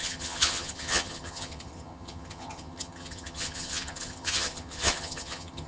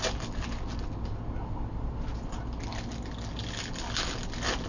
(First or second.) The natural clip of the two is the second